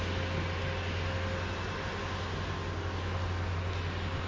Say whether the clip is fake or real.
real